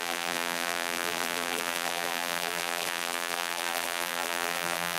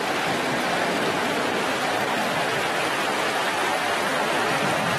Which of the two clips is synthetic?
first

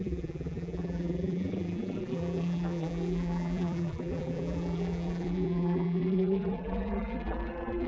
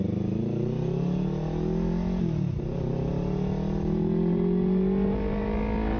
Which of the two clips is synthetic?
first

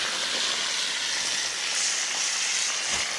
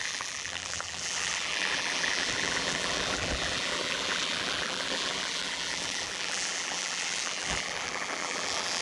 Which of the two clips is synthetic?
second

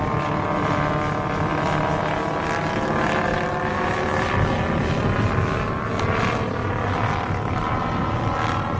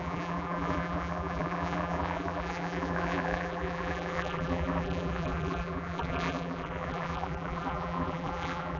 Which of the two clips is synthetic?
second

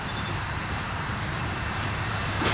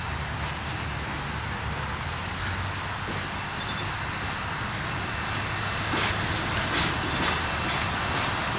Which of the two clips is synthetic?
first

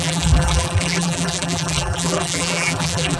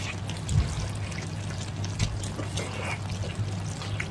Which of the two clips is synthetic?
first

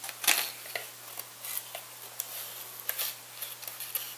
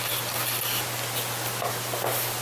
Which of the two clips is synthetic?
second